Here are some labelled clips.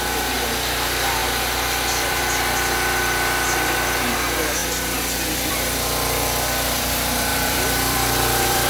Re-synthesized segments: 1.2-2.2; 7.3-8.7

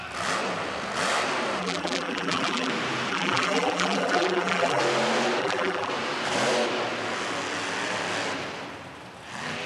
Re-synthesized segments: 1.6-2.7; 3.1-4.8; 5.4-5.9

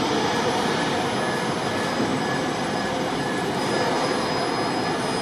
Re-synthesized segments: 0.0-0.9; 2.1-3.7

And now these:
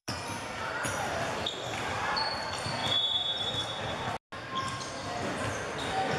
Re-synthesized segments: 0.0-2.8

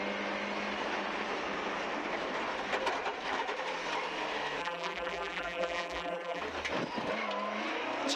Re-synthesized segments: 4.6-6.4

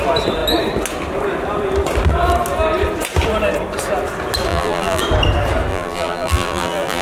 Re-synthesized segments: 4.5-5.0; 5.7-7.0

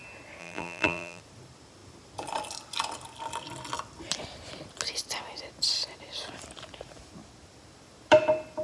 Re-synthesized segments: 0.4-1.2